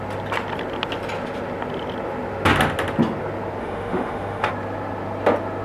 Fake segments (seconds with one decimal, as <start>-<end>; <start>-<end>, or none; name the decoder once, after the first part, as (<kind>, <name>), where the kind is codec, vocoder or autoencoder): 3.6-4.5 (autoencoder, DAC-VAE)